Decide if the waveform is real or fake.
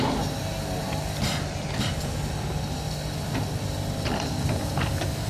real